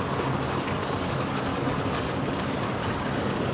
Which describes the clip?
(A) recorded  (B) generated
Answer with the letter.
B